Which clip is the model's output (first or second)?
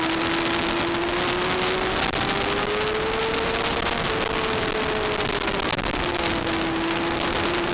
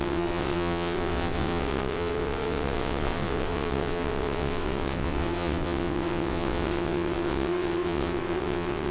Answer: second